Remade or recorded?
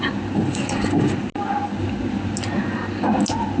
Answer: recorded